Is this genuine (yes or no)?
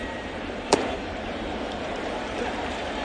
no